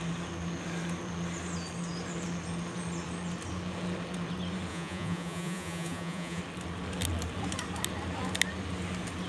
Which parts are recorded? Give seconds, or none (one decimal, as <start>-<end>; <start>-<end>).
0.0-4.7; 6.4-9.3